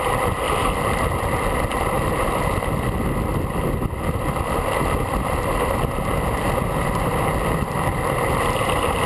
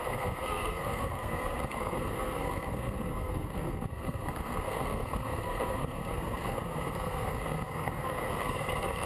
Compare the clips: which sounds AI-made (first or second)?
second